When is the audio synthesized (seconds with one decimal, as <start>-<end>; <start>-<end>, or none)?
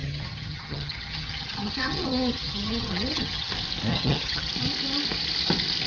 0.0-3.5; 3.9-4.5